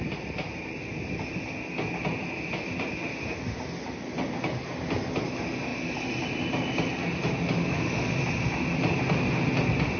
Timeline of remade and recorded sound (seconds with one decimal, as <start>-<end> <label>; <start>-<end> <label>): 0.0-10.0 recorded